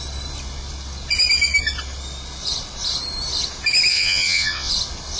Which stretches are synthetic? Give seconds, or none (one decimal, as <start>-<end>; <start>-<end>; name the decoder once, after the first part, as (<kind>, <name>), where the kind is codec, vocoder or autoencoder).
3.9-4.7 (vocoder, WaveNeXt)